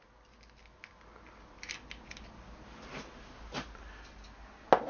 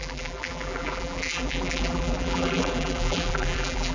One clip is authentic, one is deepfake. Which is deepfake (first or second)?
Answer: second